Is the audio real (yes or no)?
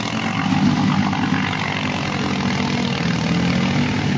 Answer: yes